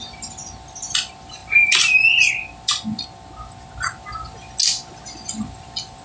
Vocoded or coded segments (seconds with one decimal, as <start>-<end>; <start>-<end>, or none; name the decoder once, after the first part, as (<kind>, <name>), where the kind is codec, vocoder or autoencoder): none